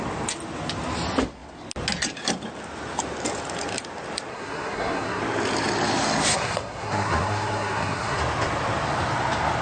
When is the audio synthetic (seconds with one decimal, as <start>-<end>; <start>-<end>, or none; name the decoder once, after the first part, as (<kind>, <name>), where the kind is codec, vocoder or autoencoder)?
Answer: 4.3-5.2 (codec, SNAC); 6.3-8.2